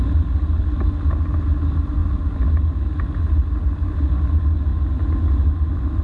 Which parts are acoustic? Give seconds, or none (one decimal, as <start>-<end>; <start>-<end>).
0.0-6.0